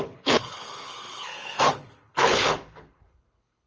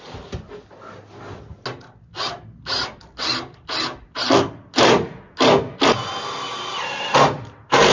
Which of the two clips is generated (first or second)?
first